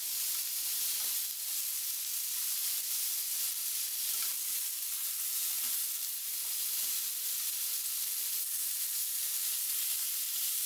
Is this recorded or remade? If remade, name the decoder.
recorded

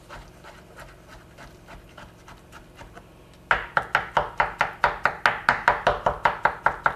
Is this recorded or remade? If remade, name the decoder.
recorded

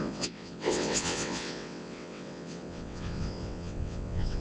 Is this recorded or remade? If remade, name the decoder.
remade, vocoder, WaveNeXt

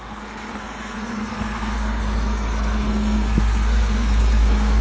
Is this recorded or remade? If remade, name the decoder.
remade, codec, SNAC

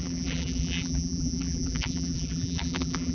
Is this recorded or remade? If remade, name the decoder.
remade, vocoder, BigVGAN v2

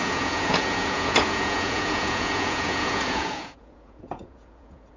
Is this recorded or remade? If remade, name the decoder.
remade, vocoder, Vocos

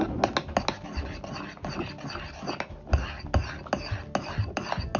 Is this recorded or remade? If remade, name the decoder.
recorded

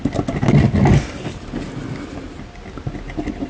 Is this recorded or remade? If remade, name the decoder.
recorded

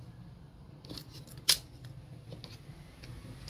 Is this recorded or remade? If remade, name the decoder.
recorded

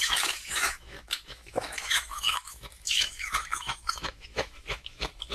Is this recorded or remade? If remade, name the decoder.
remade, autoencoder, DAC-VAE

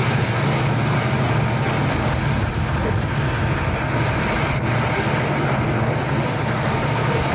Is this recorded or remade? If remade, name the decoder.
recorded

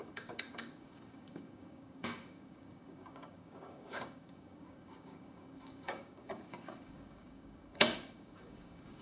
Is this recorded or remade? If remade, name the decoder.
remade, codec, DAC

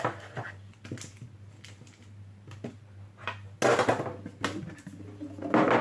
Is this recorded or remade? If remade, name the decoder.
recorded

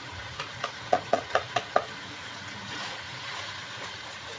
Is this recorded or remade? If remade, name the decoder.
remade, vocoder, Vocos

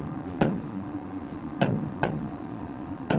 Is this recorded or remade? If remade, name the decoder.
remade, vocoder, Vocos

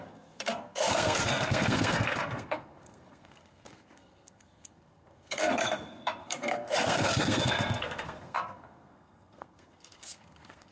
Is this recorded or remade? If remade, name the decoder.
remade, codec, SNAC